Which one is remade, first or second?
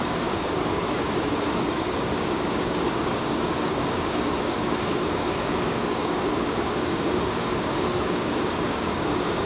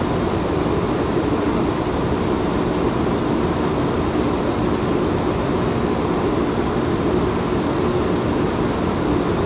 first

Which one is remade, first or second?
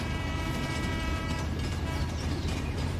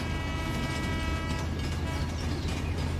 first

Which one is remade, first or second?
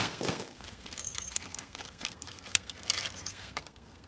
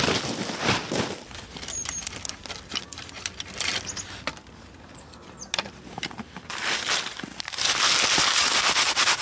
first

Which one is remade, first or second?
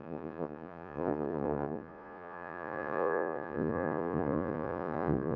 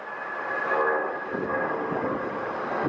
first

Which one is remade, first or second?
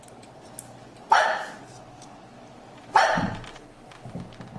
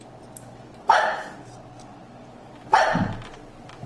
first